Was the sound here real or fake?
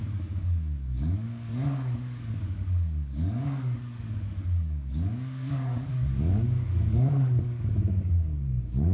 fake